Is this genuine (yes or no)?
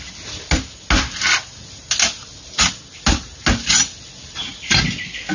yes